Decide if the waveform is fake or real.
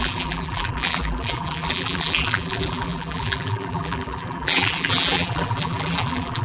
fake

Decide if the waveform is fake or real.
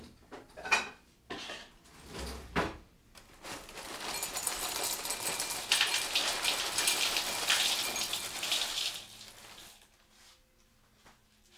real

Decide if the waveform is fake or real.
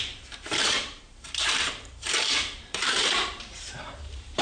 fake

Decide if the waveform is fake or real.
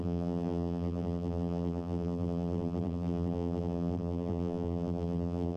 fake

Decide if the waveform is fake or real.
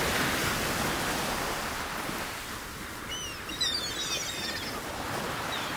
real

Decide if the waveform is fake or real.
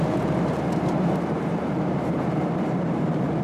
fake